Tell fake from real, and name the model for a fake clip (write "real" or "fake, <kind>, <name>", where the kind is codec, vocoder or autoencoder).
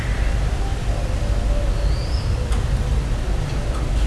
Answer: real